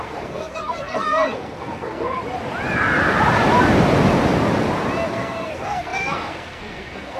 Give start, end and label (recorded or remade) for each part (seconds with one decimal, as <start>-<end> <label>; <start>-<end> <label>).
0.0-2.2 remade; 2.2-5.1 recorded; 5.1-7.2 remade